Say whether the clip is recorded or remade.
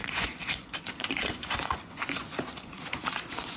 remade